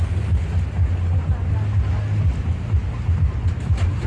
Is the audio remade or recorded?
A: recorded